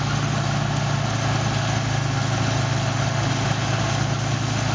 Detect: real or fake real